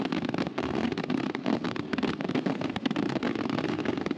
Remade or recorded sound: remade